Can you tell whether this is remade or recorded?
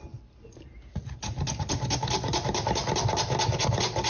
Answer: recorded